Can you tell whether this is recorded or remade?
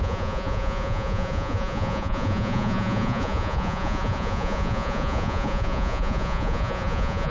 remade